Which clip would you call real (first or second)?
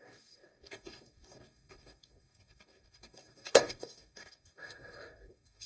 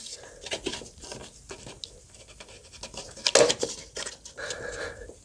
second